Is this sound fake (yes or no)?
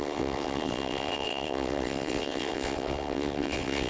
yes